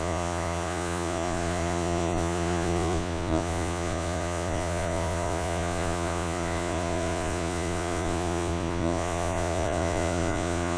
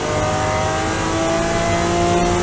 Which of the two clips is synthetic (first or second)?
first